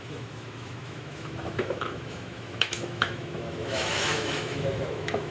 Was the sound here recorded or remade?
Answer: remade